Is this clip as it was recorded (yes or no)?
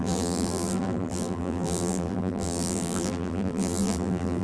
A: no